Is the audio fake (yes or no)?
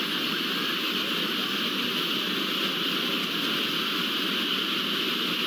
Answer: no